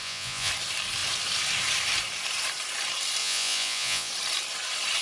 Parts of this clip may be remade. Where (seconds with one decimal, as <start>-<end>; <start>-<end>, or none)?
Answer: 0.0-0.5; 3.2-4.1